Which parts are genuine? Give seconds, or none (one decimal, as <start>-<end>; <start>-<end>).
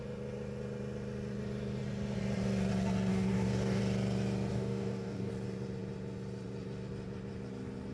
0.0-3.1; 3.8-4.5; 5.3-7.9